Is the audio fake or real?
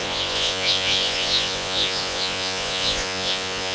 fake